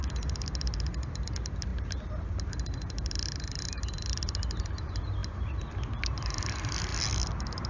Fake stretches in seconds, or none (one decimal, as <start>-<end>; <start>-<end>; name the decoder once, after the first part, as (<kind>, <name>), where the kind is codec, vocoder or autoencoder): none